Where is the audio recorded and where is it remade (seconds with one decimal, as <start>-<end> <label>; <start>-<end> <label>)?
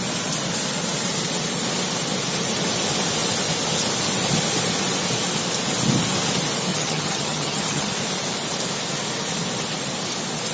0.0-6.7 recorded; 6.7-7.9 remade; 7.9-10.5 recorded